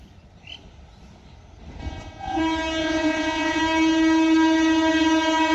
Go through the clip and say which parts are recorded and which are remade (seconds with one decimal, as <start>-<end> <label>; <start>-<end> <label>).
0.0-1.8 recorded; 1.8-2.4 remade; 2.4-2.8 recorded; 2.8-3.6 remade; 3.6-5.5 recorded